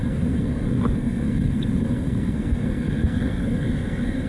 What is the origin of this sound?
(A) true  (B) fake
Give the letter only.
B